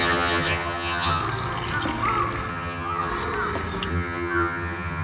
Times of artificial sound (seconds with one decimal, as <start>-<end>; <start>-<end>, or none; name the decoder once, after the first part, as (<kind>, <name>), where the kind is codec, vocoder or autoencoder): 0.0-1.2 (vocoder, HiFi-GAN); 2.5-3.1; 3.9-5.0